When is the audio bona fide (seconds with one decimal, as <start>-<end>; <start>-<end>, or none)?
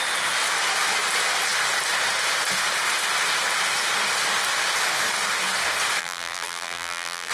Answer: 0.0-6.0